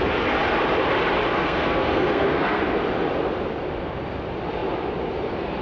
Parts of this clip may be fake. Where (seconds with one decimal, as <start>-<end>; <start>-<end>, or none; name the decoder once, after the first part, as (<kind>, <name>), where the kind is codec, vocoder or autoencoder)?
1.4-2.6 (codec, SNAC)